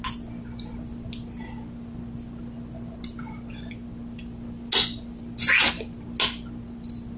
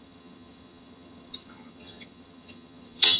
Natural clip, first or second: first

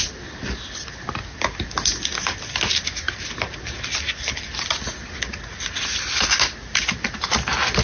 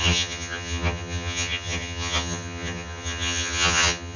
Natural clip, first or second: first